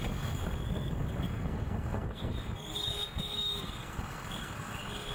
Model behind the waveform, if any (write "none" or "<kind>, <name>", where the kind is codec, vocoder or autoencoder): codec, SNAC